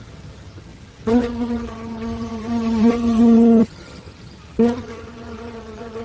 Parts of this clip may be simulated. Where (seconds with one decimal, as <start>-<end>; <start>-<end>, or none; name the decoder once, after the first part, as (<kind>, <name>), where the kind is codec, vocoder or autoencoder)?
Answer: 0.0-6.0 (vocoder, HiFi-GAN)